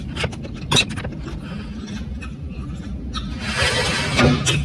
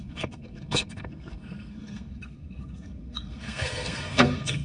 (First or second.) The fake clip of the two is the second